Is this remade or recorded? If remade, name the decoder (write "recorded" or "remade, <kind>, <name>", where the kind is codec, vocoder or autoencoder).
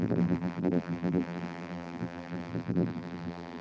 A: remade, vocoder, BigVGAN v2